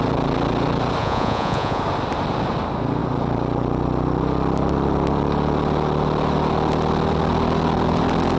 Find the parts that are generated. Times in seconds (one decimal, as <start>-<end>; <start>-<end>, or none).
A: 1.0-1.8